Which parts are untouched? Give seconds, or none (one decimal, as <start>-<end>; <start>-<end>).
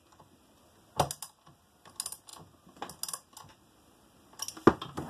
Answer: 0.0-5.1